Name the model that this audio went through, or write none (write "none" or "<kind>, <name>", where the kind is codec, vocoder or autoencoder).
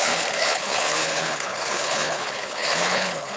codec, HILCodec